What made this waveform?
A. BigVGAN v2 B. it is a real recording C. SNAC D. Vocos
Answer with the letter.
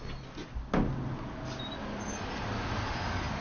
B